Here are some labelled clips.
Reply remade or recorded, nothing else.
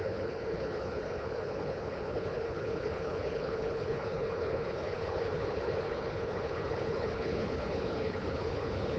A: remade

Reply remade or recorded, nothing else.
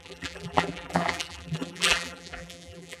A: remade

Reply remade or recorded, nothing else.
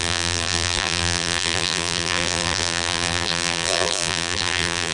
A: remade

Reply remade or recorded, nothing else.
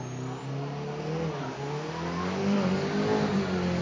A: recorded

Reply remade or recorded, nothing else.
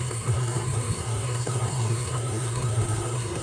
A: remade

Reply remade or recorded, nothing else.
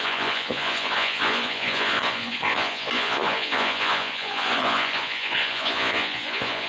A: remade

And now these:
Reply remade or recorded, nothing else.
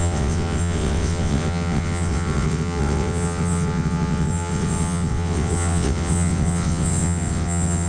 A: remade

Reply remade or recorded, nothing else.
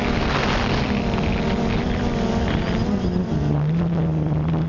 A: recorded